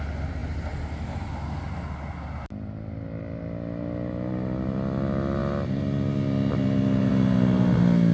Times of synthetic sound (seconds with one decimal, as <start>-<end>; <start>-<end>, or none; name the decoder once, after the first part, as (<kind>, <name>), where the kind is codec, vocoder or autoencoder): none